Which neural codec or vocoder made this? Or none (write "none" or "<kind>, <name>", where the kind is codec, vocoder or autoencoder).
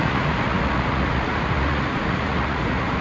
vocoder, Vocos